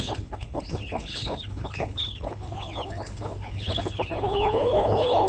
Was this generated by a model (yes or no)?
yes